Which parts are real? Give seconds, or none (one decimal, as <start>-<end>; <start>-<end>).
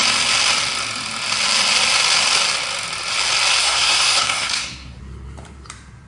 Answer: 0.0-3.6; 5.0-6.1